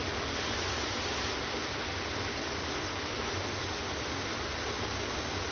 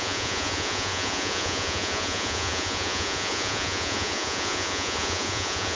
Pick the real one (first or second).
first